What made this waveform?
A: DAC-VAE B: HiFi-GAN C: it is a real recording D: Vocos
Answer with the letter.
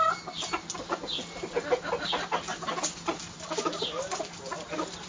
C